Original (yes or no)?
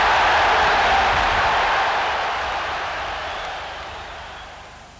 yes